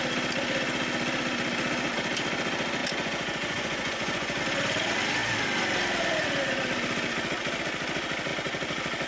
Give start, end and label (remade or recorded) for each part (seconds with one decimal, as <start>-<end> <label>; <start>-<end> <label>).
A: 0.0-2.8 recorded; 2.8-4.4 remade; 4.4-9.1 recorded